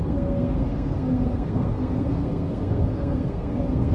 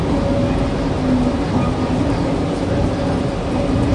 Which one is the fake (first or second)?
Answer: first